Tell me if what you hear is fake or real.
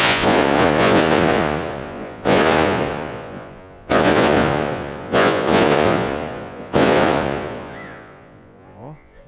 fake